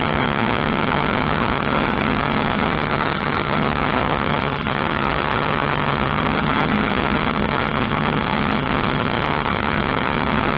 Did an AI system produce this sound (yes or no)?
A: yes